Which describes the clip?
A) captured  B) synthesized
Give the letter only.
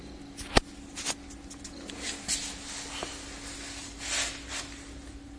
A